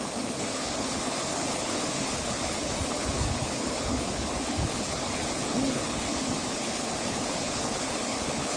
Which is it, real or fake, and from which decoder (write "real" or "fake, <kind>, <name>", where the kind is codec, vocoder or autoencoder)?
fake, codec, HILCodec